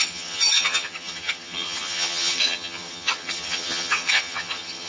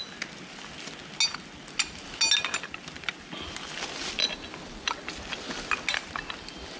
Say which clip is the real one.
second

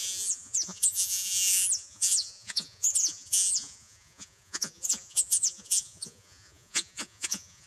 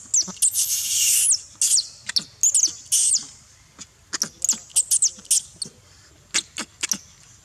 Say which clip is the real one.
second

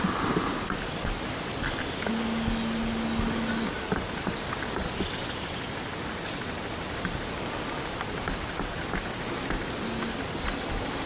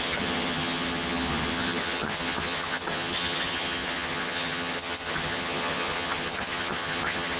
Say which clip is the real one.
first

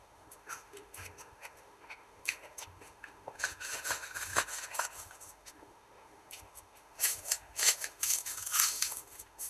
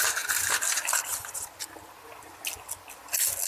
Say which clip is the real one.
second